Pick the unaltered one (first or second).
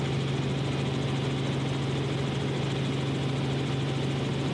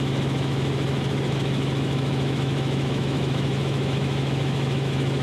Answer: first